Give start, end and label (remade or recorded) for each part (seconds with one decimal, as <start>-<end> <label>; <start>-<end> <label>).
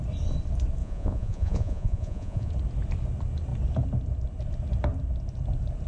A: 0.0-0.8 recorded; 0.8-2.5 remade; 2.5-5.9 recorded